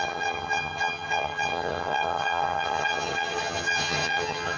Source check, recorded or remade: remade